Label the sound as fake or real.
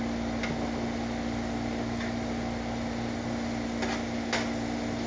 real